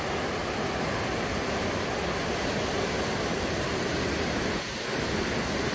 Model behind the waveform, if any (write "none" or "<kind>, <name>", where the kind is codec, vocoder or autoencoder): none